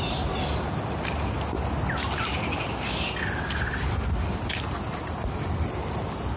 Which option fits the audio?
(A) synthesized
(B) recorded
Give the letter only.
B